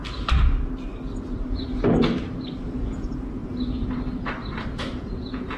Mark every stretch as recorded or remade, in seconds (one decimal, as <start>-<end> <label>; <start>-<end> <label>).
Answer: 0.0-2.6 recorded; 2.6-3.4 remade; 3.4-4.8 recorded; 4.8-5.6 remade